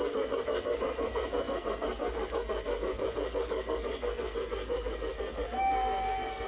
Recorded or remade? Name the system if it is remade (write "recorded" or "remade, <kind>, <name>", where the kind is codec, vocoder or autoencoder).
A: remade, codec, SNAC